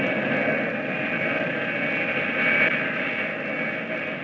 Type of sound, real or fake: real